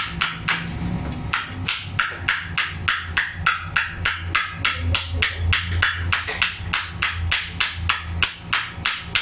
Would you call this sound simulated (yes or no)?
no